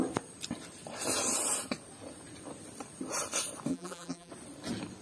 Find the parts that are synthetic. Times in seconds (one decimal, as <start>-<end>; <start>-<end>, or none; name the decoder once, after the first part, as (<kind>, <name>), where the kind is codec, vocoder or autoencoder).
3.7-4.3 (vocoder, BigVGAN v2)